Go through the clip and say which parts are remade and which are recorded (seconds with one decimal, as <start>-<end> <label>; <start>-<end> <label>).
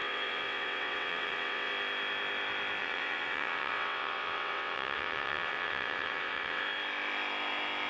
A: 0.0-1.7 remade; 1.7-2.8 recorded; 2.8-6.6 remade; 6.6-7.9 recorded